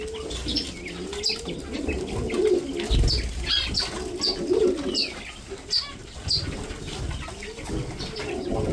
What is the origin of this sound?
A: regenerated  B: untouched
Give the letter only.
B